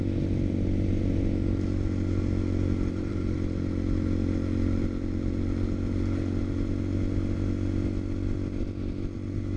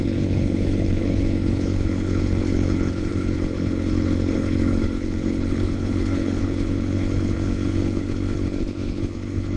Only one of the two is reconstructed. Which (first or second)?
second